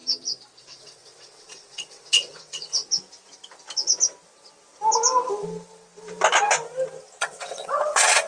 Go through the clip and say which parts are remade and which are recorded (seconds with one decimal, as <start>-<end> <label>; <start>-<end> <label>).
0.0-0.6 recorded; 0.6-2.8 remade; 2.8-7.2 recorded; 7.2-8.3 remade